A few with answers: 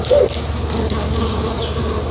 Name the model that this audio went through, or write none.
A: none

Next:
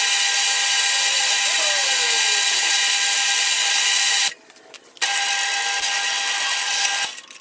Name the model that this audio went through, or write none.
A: none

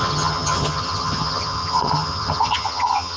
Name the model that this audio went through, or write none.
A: vocoder, HiFi-GAN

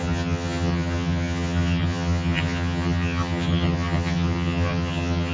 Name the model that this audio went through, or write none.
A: vocoder, HiFi-GAN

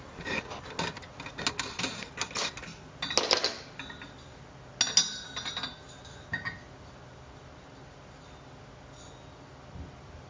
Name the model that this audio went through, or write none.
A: none